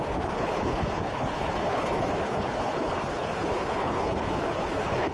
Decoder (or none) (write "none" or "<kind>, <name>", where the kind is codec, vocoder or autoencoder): codec, HILCodec